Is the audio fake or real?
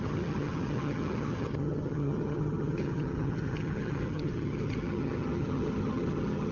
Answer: fake